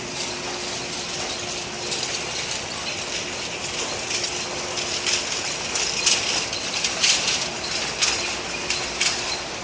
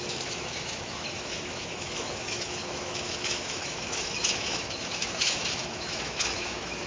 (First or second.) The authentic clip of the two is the first